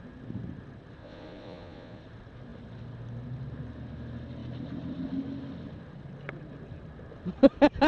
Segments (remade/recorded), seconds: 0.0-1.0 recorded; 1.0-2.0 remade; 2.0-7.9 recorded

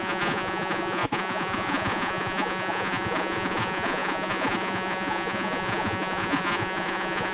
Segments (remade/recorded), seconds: 0.0-7.3 remade

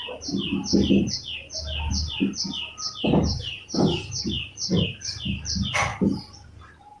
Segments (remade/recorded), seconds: 0.0-7.0 recorded